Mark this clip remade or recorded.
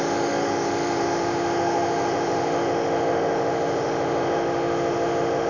remade